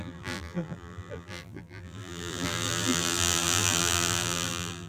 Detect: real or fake fake